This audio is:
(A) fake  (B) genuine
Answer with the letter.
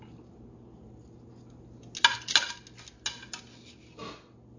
B